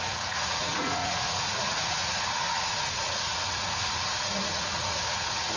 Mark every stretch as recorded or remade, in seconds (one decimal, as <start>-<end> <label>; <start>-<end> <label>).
0.0-5.6 remade